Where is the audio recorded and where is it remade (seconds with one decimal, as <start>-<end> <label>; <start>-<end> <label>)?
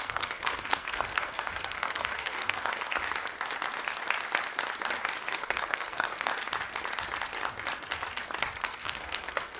0.0-2.7 remade; 2.7-5.3 recorded; 5.3-6.3 remade; 6.3-8.6 recorded; 8.6-9.6 remade